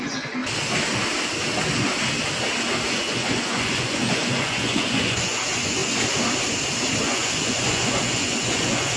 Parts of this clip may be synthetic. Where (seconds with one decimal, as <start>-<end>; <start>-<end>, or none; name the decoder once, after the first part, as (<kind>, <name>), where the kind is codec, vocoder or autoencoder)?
0.0-0.4 (vocoder, Vocos); 2.9-5.8; 7.0-9.0